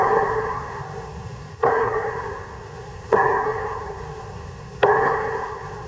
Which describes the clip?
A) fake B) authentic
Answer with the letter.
A